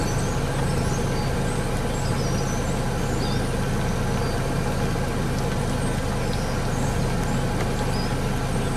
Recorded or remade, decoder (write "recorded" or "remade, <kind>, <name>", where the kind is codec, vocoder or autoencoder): recorded